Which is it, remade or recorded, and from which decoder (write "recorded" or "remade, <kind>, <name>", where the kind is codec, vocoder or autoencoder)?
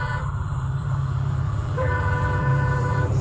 remade, vocoder, BigVGAN v2